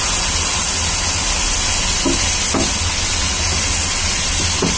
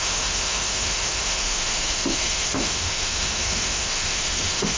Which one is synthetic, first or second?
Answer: second